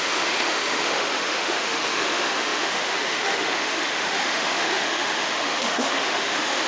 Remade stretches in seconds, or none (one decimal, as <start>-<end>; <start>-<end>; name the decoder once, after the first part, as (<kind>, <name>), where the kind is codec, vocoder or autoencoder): 0.0-6.7 (autoencoder, DAC-VAE)

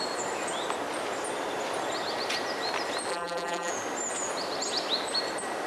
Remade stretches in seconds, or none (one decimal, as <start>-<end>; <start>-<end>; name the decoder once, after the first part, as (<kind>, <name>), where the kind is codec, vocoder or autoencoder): 3.1-3.7 (vocoder, BigVGAN v2)

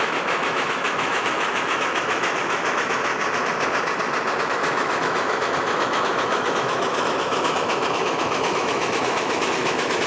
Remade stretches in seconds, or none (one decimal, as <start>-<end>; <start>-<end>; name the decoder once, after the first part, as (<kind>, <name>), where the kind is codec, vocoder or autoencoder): 0.0-3.1 (autoencoder, DAC-VAE); 4.4-10.1